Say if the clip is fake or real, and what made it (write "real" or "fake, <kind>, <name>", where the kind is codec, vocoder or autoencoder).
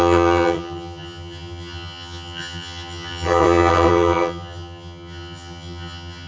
fake, vocoder, HiFi-GAN